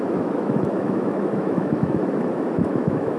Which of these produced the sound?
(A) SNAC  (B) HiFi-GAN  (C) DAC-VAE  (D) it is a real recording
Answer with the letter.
C